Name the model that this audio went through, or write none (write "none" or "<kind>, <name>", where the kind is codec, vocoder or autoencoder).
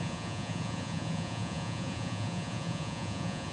vocoder, Vocos